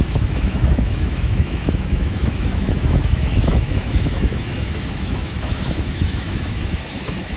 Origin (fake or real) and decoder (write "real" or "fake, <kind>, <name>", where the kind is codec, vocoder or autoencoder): fake, autoencoder, DAC-VAE